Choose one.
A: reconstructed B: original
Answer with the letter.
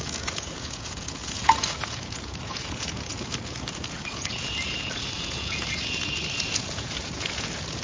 A